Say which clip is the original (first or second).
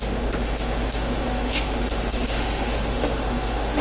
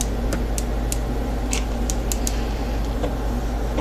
second